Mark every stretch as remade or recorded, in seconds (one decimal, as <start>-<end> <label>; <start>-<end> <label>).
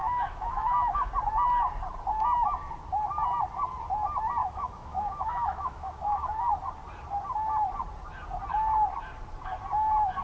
0.0-1.1 remade; 1.1-4.4 recorded; 4.4-6.5 remade; 6.5-10.2 recorded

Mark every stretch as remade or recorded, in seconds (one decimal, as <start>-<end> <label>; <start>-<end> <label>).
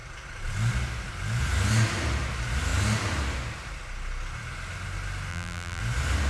0.0-5.3 recorded; 5.3-5.8 remade; 5.8-6.3 recorded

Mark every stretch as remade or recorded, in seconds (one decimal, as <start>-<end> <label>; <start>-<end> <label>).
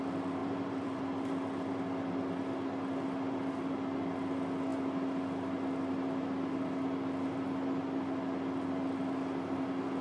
0.0-0.4 recorded; 0.4-1.0 remade; 1.0-10.0 recorded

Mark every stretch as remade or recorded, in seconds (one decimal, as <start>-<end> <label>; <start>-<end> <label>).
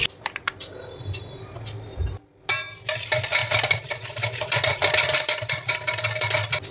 0.0-3.4 recorded; 3.4-5.5 remade; 5.5-6.7 recorded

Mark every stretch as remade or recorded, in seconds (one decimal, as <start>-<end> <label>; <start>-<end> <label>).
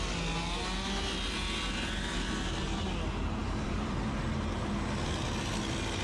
0.0-3.4 recorded; 3.4-4.0 remade; 4.0-6.0 recorded